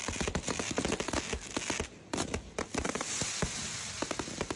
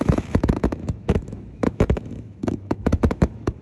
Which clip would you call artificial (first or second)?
second